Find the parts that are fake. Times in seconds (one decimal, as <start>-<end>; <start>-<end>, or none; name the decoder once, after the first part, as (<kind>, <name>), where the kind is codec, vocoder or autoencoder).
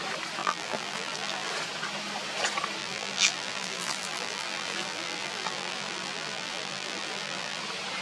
0.4-1.5 (vocoder, BigVGAN v2); 2.8-7.6